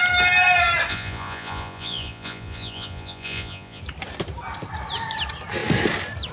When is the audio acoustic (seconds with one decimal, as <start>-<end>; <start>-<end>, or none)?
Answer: 0.0-0.9; 3.8-6.3